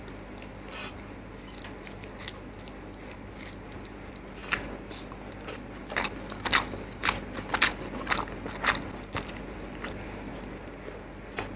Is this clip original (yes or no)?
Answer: yes